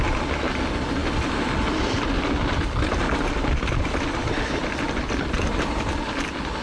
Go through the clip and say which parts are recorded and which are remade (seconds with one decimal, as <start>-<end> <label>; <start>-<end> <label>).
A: 0.0-4.2 recorded; 4.2-5.0 remade; 5.0-6.6 recorded